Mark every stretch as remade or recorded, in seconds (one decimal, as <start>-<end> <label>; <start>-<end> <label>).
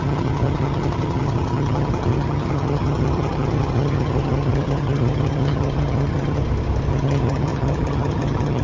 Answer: 0.0-6.4 remade; 6.4-6.9 recorded; 6.9-8.6 remade